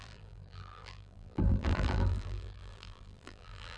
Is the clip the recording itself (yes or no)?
no